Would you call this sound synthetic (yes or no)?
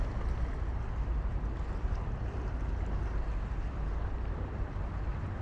no